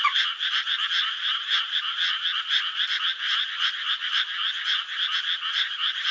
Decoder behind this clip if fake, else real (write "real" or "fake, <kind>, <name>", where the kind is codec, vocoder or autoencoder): fake, vocoder, Vocos